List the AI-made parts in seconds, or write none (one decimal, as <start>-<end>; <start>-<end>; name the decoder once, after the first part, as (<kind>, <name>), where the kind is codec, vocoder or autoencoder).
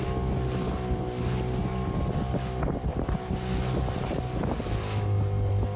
none